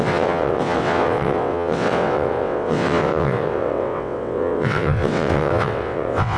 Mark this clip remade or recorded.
remade